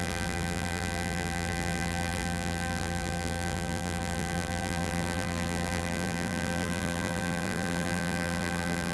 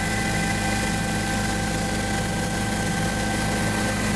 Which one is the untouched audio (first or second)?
second